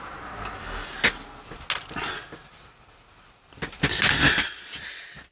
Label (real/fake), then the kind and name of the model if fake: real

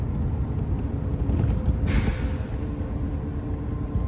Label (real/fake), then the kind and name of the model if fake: real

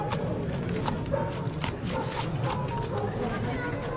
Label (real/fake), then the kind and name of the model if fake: real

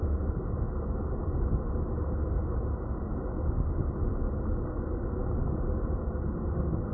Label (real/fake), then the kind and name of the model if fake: real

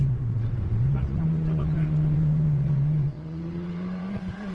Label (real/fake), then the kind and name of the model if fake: fake, vocoder, WaveNeXt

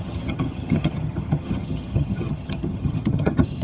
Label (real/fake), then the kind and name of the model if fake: fake, vocoder, HiFi-GAN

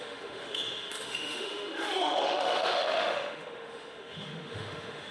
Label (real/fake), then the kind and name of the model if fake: fake, autoencoder, DAC-VAE